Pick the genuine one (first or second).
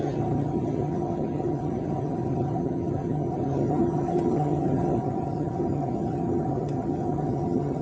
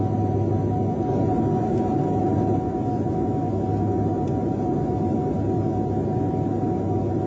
second